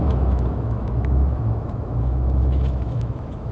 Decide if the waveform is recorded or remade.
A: remade